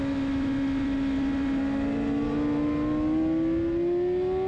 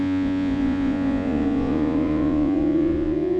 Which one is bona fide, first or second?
first